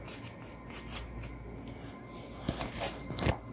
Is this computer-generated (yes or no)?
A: no